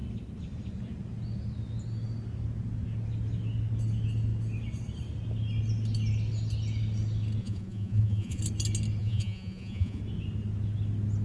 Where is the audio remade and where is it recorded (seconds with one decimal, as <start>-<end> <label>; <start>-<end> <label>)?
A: 0.0-7.4 recorded; 7.4-8.4 remade; 8.4-9.0 recorded; 9.0-10.0 remade; 10.0-11.2 recorded